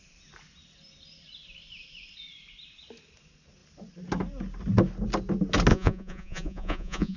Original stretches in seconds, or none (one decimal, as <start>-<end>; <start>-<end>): 0.0-5.7